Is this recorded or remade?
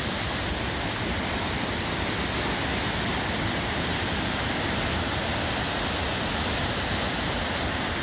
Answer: recorded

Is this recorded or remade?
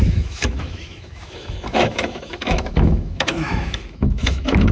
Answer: remade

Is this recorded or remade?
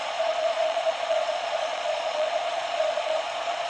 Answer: remade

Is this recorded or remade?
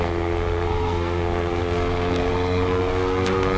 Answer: remade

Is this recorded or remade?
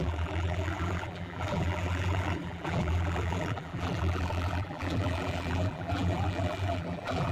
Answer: remade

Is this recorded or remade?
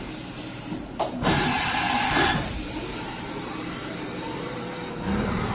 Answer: remade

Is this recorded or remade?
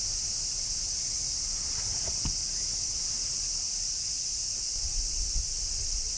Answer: recorded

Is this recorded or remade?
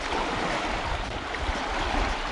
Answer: remade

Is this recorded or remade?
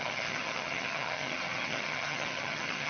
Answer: remade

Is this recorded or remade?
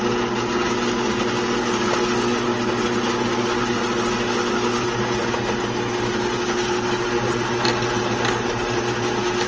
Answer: recorded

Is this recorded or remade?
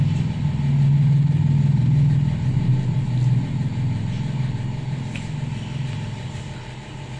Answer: recorded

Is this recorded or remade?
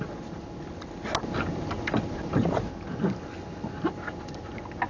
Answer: recorded